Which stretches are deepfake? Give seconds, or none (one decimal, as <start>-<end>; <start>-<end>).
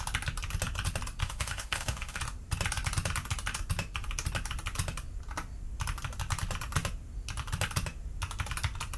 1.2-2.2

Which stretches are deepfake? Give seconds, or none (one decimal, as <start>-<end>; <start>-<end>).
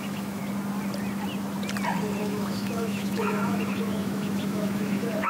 0.0-0.4; 2.2-5.3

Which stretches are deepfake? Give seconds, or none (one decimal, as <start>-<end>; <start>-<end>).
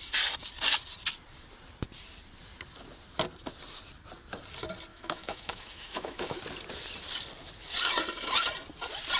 4.9-6.4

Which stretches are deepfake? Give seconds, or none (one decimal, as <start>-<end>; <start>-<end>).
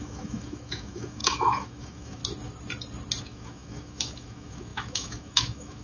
0.0-2.2; 3.2-5.8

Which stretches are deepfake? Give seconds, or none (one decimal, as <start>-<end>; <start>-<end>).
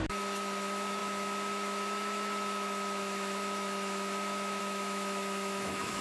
0.0-6.0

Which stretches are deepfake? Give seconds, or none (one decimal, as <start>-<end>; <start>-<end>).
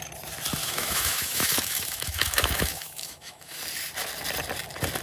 0.6-3.6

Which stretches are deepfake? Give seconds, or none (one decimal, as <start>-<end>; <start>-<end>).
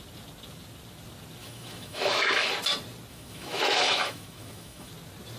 1.4-2.5; 3.1-4.9